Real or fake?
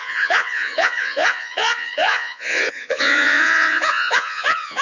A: fake